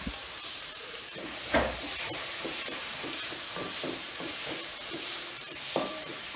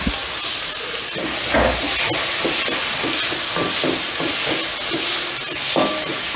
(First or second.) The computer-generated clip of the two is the first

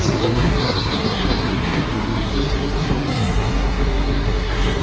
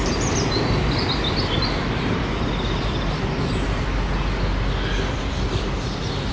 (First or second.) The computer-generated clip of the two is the first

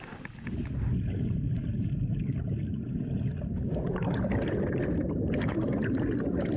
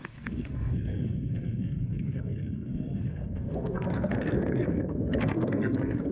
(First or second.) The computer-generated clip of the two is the second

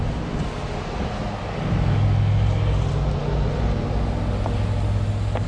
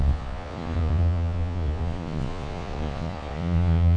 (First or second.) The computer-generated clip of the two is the second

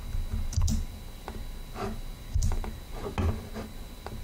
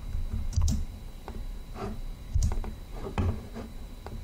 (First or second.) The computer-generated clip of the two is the second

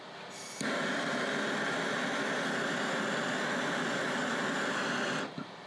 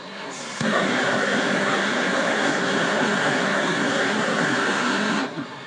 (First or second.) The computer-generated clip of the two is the second